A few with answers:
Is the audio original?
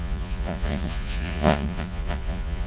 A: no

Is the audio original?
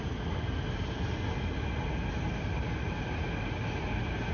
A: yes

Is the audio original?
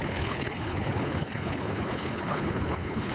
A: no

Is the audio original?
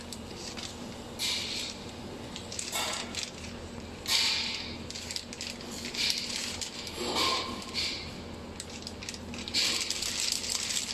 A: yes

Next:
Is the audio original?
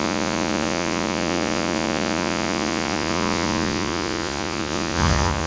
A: no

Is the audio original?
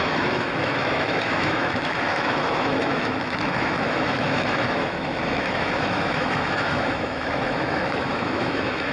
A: no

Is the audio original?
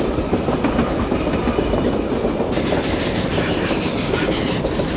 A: yes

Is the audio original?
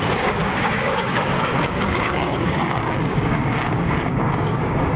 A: no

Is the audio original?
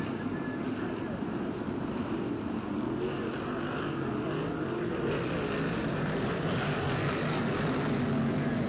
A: yes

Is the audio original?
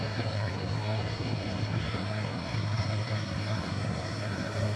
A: no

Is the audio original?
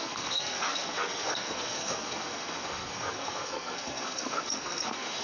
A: no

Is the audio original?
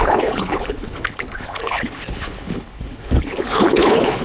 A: no